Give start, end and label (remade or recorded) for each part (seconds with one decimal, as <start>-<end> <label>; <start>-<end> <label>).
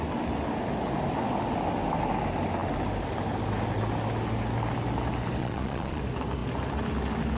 0.0-5.4 recorded; 5.4-6.0 remade; 6.0-7.4 recorded